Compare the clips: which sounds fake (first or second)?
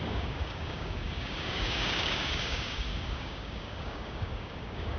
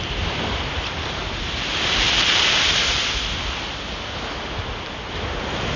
first